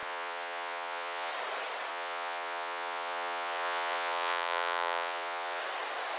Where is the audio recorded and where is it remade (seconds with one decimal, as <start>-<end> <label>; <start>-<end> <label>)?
0.0-1.3 remade; 1.3-1.9 recorded; 1.9-5.6 remade; 5.6-6.2 recorded